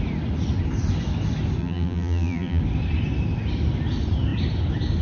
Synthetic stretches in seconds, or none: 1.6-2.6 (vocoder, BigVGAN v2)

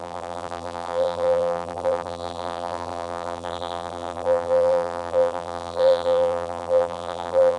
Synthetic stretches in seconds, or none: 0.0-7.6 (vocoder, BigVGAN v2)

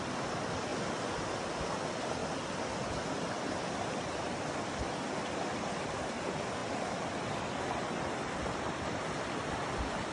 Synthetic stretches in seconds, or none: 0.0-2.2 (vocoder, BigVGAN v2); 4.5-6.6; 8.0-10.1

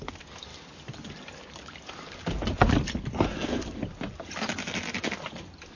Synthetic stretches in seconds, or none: none